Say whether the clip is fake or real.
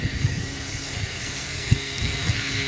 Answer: fake